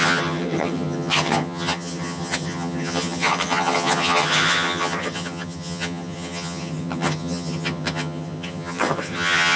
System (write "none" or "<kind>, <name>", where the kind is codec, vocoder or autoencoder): vocoder, HiFi-GAN